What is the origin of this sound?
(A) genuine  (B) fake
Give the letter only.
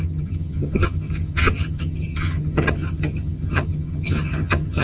B